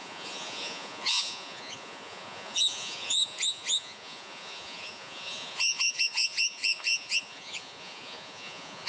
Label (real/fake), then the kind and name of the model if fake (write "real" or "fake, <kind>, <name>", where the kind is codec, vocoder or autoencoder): fake, vocoder, Vocos